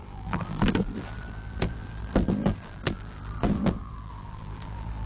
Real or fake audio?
fake